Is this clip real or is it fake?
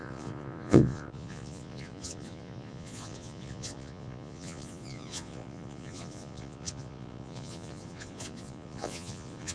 fake